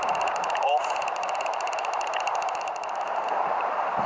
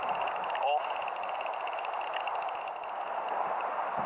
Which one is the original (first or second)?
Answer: second